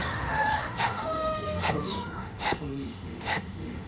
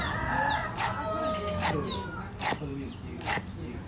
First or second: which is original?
second